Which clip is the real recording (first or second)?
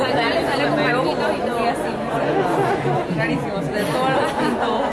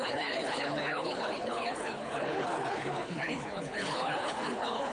first